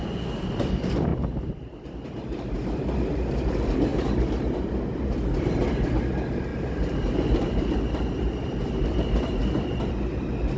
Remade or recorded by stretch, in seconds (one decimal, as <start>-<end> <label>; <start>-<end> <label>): 0.0-1.1 recorded; 1.1-1.9 remade; 1.9-3.9 recorded; 3.9-4.6 remade; 4.6-6.5 recorded; 6.5-9.9 remade; 9.9-10.6 recorded